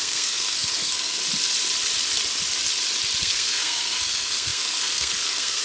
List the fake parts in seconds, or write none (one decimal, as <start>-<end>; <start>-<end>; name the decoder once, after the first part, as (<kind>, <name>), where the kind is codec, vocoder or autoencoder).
0.0-1.2 (codec, SNAC); 3.2-5.6